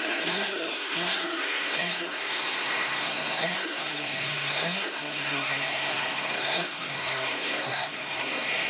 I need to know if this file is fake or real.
fake